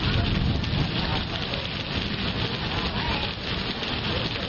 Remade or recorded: recorded